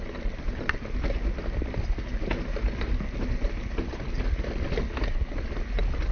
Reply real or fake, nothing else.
real